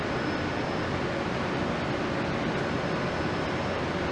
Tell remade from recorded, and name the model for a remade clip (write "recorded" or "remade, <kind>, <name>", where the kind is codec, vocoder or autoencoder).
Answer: recorded